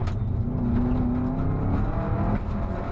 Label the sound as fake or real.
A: real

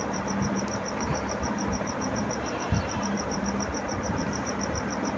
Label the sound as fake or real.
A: fake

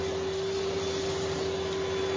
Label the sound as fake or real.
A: real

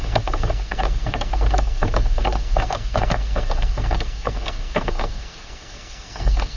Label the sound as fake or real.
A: fake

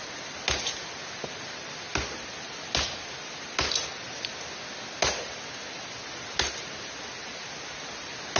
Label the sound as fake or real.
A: real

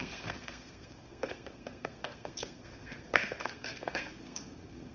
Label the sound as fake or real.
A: fake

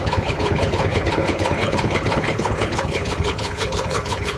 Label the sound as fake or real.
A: fake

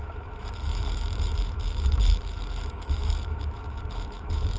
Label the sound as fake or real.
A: fake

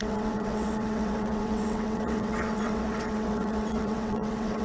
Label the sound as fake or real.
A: fake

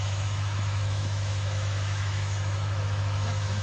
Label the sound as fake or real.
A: fake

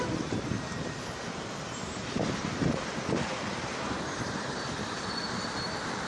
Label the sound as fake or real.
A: fake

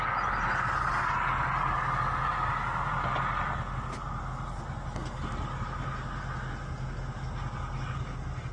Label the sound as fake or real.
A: real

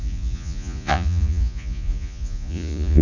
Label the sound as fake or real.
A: fake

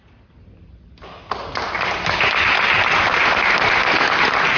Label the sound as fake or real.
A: real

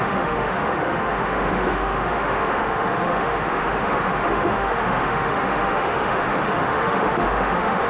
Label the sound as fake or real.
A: fake